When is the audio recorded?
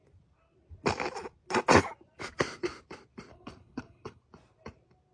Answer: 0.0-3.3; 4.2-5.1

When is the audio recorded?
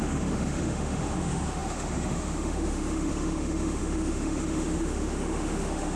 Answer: none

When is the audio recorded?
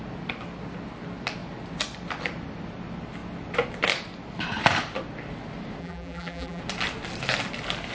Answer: 0.0-5.8; 6.6-7.9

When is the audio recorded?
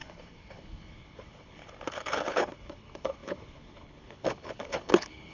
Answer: none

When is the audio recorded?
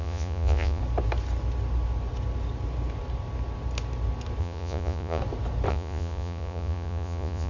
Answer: 0.8-4.4; 5.2-5.7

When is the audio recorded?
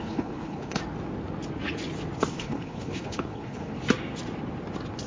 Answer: 0.8-2.3; 3.7-5.1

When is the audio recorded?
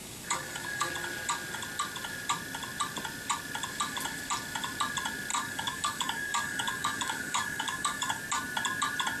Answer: 0.9-5.3; 8.2-9.2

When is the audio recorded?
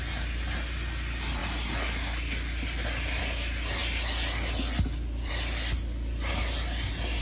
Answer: 0.0-7.2